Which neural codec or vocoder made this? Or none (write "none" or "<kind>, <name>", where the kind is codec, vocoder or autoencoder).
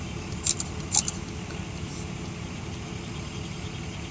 none